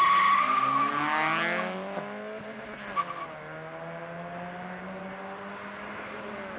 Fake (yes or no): no